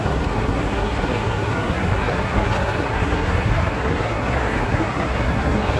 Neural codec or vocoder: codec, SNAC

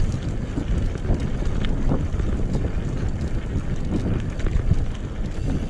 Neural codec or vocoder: none